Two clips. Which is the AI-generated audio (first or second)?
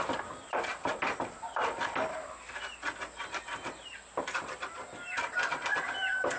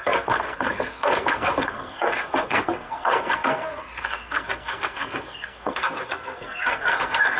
second